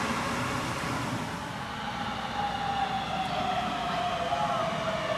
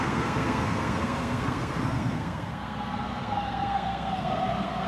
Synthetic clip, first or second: second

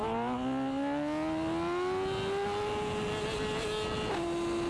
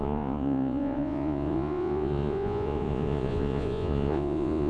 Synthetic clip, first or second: second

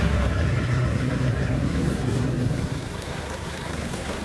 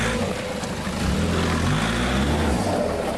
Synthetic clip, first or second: first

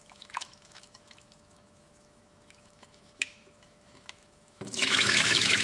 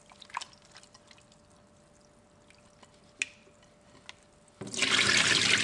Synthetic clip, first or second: first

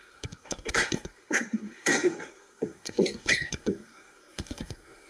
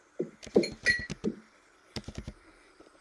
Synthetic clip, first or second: first